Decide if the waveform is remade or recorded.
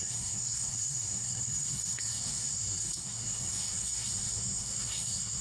remade